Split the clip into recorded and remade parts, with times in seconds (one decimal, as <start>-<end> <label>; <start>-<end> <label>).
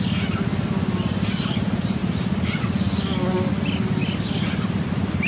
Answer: 0.0-2.0 recorded; 2.0-2.6 remade; 2.6-5.3 recorded